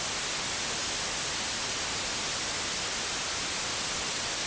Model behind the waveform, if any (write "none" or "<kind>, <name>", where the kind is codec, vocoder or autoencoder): none